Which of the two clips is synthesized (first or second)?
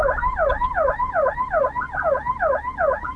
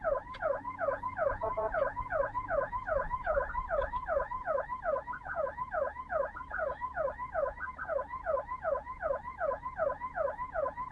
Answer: second